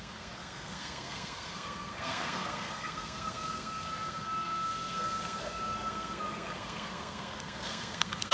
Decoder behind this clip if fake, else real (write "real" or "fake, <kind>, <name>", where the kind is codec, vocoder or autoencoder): fake, codec, SNAC